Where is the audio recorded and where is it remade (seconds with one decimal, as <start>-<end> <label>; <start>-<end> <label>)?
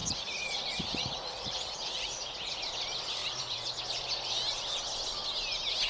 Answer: 0.0-2.6 remade; 2.6-3.2 recorded; 3.2-3.8 remade; 3.8-5.9 recorded